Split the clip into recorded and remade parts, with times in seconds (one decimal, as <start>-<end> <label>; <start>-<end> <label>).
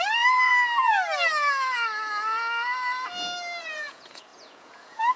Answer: 0.0-0.5 remade; 0.5-3.6 recorded; 3.6-5.2 remade